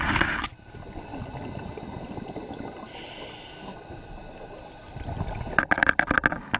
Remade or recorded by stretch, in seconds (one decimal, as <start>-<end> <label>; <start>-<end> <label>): 0.0-6.6 recorded